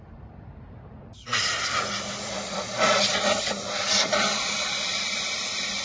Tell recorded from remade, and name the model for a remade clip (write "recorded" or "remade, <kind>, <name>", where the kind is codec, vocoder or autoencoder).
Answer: remade, vocoder, BigVGAN v2